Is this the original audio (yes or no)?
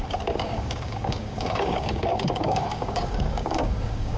no